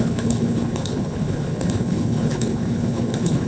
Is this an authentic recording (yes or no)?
no